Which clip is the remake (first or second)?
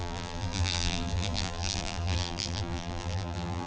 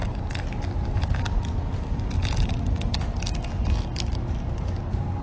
first